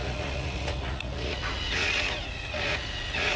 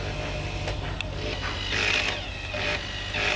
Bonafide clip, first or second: second